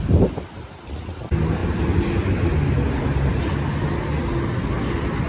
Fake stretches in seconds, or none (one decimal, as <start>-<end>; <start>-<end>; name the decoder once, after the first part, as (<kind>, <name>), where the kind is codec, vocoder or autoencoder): none